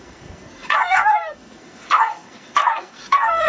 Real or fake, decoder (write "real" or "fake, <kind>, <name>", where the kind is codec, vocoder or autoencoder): fake, codec, SNAC